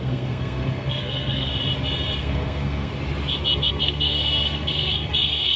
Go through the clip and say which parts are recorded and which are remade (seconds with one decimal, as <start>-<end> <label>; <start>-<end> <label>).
0.0-1.5 remade; 1.5-2.2 recorded; 2.2-2.9 remade; 2.9-3.7 recorded; 3.7-5.6 remade